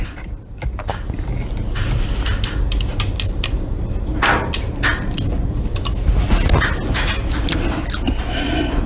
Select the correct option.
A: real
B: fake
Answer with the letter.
A